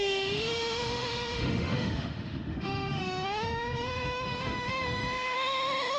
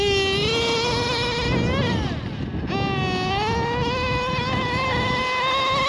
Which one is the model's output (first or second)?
first